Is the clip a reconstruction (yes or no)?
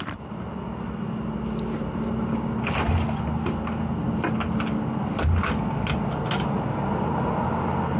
no